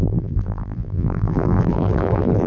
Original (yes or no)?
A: no